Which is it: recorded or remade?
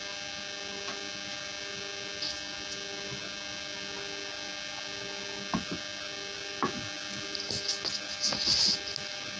recorded